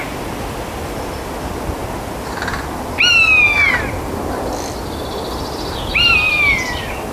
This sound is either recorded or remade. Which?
recorded